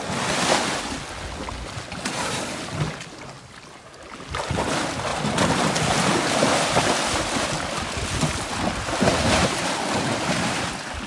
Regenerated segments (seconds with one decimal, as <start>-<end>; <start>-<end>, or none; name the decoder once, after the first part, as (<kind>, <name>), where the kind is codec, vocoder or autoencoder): 9.1-9.6 (vocoder, BigVGAN v2)